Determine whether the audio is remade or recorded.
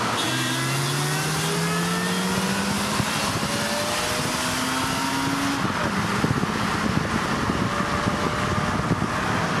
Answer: recorded